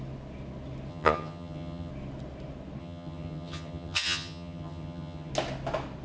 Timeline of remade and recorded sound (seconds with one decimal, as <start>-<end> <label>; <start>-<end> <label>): 0.0-0.9 recorded; 0.9-1.9 remade; 1.9-2.8 recorded; 2.8-5.3 remade; 5.3-6.0 recorded